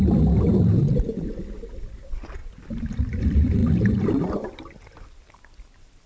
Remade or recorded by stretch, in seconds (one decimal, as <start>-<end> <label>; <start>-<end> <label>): 0.0-3.6 remade; 3.6-4.3 recorded; 4.3-6.1 remade

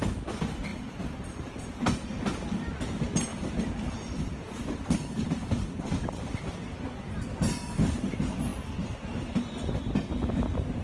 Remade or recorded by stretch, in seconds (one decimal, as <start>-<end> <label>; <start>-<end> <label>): 0.0-0.7 recorded; 0.7-1.5 remade; 1.5-3.3 recorded; 3.3-6.5 remade; 6.5-10.8 recorded

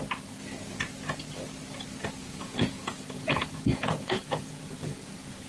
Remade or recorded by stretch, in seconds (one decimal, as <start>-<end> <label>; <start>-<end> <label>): 0.0-2.2 recorded; 2.2-5.5 remade

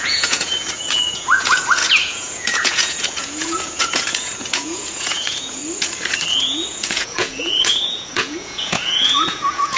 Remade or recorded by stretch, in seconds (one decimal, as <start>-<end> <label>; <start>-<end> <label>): 0.0-5.6 remade; 5.6-6.3 recorded; 6.3-9.8 remade

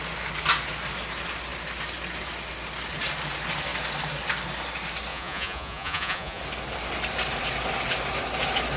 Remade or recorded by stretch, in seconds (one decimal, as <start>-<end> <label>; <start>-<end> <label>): 0.0-5.1 recorded; 5.1-6.4 remade; 6.4-8.8 recorded

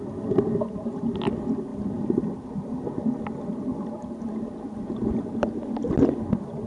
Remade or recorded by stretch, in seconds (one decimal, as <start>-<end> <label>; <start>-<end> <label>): 0.0-6.7 recorded

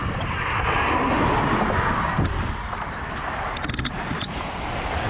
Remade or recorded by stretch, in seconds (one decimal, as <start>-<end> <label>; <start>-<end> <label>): 0.0-5.1 recorded